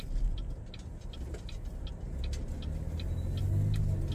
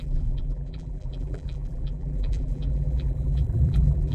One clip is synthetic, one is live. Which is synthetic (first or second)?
second